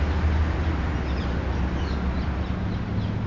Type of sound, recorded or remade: recorded